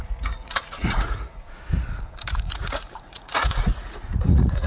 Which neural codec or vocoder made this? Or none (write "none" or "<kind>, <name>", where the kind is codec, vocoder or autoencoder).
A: vocoder, Vocos